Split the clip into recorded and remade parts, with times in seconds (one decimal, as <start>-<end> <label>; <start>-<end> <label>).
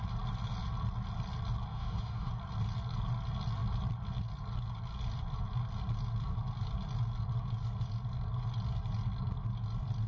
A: 0.0-1.7 recorded; 1.7-2.3 remade; 2.3-10.1 recorded